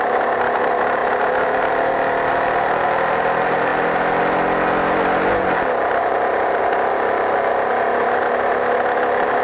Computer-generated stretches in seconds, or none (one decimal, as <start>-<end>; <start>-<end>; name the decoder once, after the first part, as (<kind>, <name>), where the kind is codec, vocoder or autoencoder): none